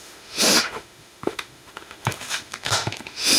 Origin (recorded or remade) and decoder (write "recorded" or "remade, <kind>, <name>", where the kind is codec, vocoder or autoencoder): remade, autoencoder, DAC-VAE